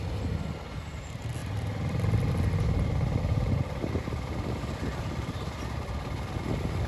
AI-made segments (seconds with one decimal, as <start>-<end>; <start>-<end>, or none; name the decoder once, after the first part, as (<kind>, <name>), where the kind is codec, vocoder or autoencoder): none